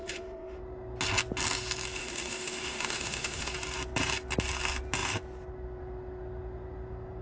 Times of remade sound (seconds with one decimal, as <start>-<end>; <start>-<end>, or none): 0.0-0.6; 2.0-3.5